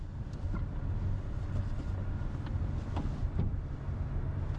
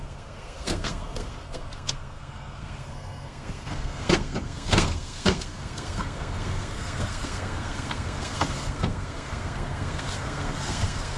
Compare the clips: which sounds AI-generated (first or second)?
second